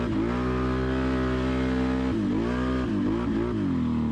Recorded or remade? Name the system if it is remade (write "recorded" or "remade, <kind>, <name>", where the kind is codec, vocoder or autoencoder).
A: recorded